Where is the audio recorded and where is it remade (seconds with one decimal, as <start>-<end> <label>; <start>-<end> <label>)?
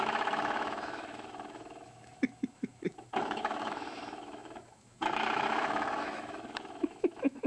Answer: 0.0-7.5 remade